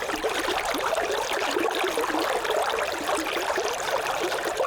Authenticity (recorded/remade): remade